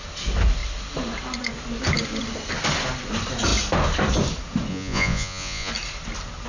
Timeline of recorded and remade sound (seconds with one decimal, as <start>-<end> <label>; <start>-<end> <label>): 0.0-4.7 recorded; 4.7-5.7 remade; 5.7-6.5 recorded